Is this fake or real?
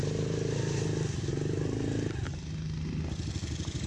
real